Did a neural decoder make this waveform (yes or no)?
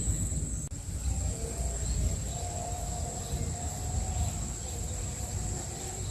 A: no